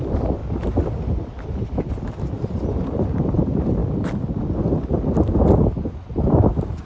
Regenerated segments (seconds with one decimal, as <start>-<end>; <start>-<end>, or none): none